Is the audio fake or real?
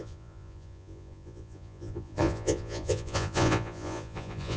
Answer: fake